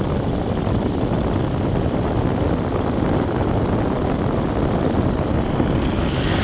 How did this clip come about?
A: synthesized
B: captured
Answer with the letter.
B